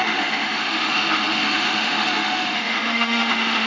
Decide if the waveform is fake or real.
fake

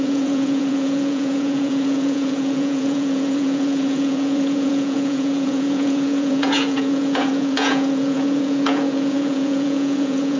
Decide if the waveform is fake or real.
fake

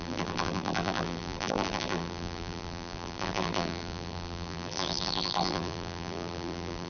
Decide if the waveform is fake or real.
fake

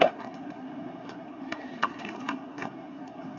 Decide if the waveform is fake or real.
fake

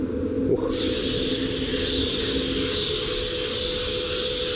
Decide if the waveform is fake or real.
real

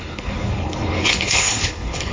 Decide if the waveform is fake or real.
fake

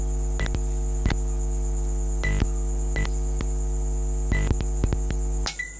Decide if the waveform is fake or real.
real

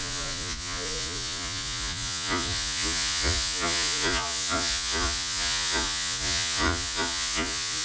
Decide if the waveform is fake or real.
fake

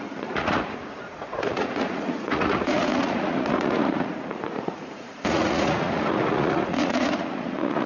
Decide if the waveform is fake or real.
fake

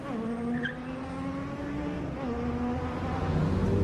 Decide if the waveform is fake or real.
real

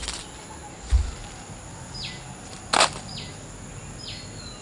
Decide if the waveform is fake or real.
real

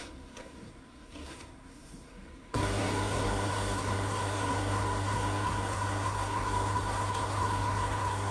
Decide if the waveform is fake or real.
fake